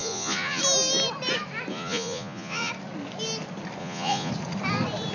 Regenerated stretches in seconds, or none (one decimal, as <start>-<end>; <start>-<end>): 0.0-0.6; 1.7-2.7; 3.8-4.3